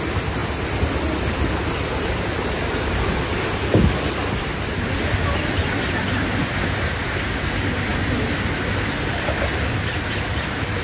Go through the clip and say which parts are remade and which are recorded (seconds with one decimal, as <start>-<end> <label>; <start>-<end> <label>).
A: 0.0-3.8 remade; 3.8-4.4 recorded; 4.4-7.9 remade; 7.9-9.1 recorded; 9.1-10.8 remade